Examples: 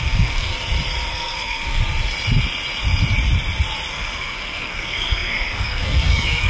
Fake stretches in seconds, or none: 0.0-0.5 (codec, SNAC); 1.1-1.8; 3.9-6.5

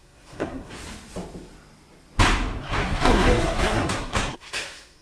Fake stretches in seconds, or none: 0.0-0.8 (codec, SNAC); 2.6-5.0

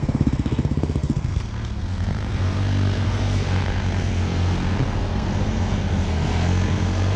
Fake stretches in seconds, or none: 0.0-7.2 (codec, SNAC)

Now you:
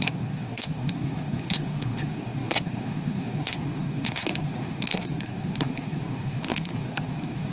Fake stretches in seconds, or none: 0.0-7.5 (codec, SNAC)

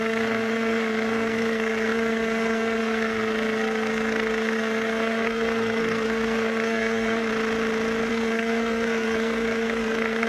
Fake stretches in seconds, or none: 0.0-7.3 (codec, SNAC); 8.1-10.3